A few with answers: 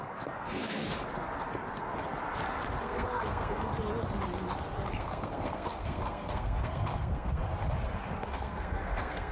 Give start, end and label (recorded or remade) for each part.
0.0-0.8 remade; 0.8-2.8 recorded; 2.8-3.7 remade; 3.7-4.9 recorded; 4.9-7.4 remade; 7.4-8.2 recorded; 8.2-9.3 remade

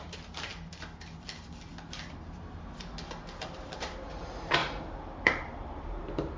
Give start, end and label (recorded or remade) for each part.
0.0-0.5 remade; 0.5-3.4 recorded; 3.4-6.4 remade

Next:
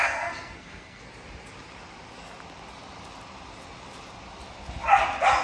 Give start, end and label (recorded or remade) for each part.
0.0-1.0 remade; 1.0-5.4 recorded

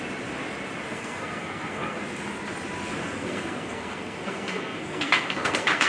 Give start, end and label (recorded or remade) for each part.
0.0-0.9 recorded; 0.9-2.0 remade; 2.0-3.0 recorded; 3.0-5.9 remade

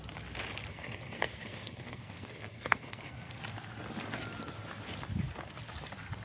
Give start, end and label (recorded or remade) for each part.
0.0-0.7 recorded; 0.7-3.4 remade; 3.4-6.2 recorded

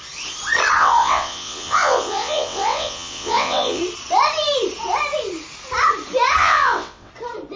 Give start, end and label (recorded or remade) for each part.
0.0-0.8 recorded; 0.8-3.8 remade; 3.8-6.4 recorded; 6.4-7.1 remade; 7.1-7.6 recorded

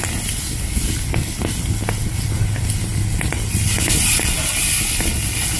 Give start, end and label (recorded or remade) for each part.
0.0-5.6 recorded